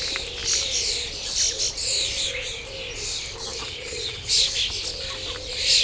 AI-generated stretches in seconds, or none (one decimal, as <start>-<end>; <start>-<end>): 3.6-4.3